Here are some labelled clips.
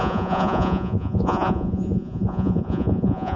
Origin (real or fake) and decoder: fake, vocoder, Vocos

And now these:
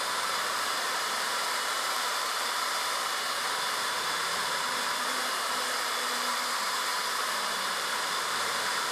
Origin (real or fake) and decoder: fake, vocoder, BigVGAN v2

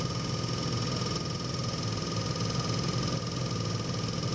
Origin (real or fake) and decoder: real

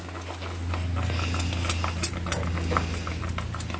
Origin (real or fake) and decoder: real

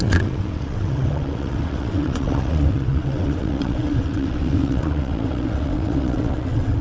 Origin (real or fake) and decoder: fake, vocoder, WaveNeXt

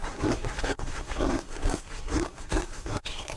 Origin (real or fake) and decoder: fake, codec, SNAC